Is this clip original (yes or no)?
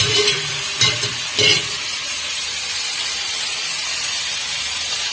no